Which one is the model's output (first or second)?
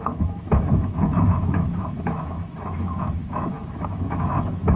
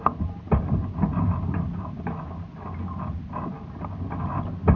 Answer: first